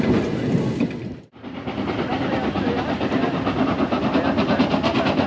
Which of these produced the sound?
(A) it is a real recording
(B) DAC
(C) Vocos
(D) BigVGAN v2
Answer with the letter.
A